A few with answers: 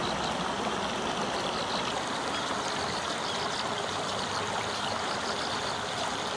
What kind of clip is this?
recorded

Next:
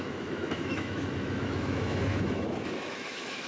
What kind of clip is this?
remade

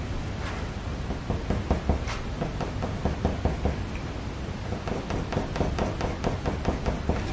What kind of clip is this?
recorded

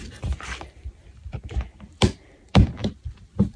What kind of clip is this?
remade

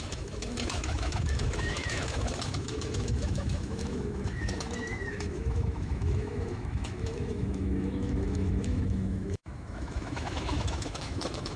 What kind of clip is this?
remade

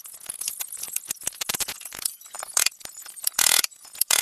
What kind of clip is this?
remade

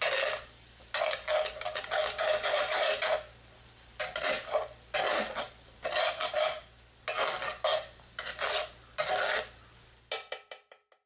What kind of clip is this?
recorded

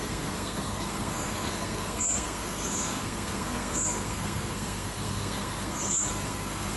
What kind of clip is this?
remade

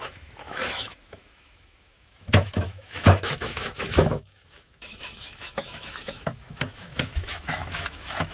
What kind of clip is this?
remade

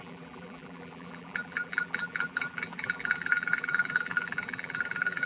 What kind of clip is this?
remade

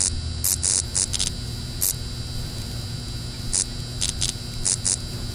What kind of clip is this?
recorded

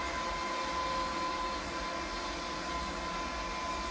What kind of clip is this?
recorded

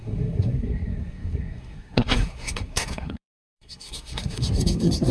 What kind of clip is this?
remade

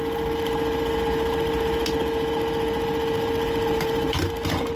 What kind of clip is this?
recorded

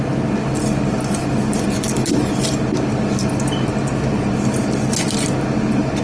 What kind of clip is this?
recorded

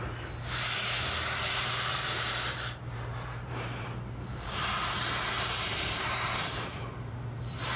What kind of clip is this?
remade